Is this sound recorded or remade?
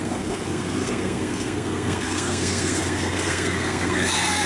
remade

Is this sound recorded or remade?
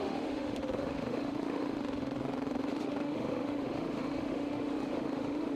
remade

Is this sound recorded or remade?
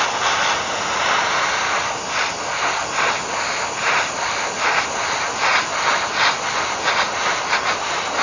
recorded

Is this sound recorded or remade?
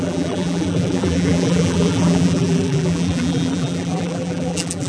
remade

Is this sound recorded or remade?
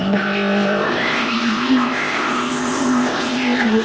remade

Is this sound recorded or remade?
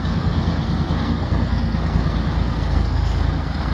remade